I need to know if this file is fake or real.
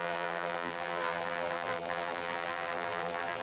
fake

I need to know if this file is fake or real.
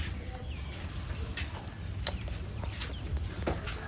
fake